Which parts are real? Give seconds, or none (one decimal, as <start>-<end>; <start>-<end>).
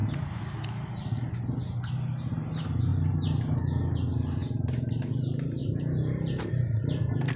1.4-4.4; 5.1-5.6; 6.5-7.4